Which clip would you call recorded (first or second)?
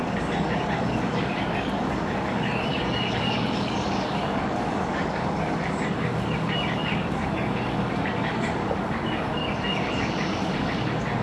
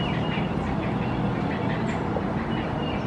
second